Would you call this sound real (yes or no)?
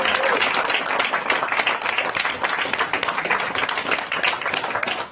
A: yes